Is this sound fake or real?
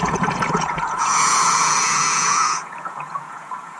fake